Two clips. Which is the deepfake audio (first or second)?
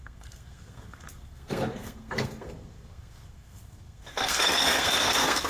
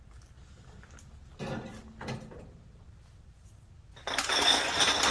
first